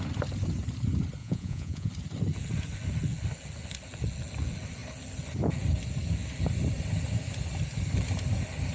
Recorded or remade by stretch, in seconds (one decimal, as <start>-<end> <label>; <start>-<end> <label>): 0.0-1.2 recorded; 1.2-1.9 remade; 1.9-8.7 recorded